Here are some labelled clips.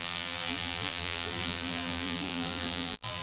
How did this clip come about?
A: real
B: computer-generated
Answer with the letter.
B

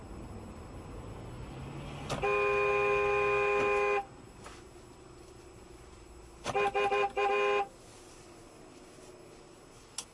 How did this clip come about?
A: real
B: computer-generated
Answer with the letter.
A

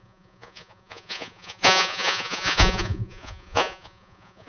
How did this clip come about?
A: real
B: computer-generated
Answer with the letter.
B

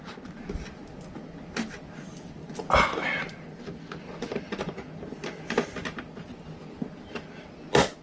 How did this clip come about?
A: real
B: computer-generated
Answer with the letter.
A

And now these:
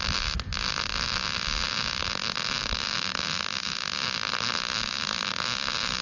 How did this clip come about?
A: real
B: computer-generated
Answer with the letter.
A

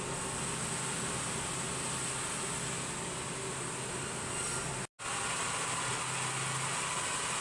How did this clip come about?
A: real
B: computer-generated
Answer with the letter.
A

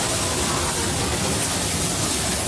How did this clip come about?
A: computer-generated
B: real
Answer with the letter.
B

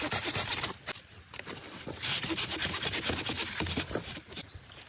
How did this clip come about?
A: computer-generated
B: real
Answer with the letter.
B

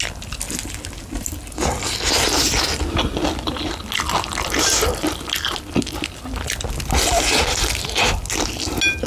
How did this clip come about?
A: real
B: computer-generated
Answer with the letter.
A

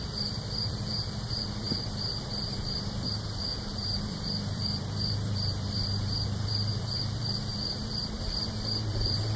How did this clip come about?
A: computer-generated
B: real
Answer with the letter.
A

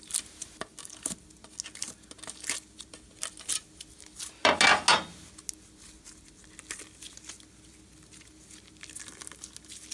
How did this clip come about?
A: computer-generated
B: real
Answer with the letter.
B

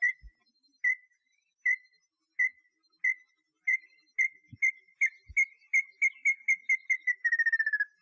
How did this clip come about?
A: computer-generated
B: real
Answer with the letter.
B